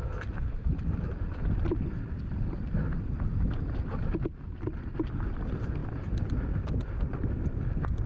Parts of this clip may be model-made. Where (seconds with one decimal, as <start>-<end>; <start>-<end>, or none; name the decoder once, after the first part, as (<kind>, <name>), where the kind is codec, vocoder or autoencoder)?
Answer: 0.6-4.2 (vocoder, BigVGAN v2); 5.8-7.1